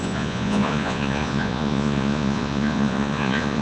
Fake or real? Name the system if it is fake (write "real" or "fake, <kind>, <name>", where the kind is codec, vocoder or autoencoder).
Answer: fake, vocoder, Vocos